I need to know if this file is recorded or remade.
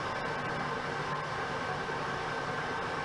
recorded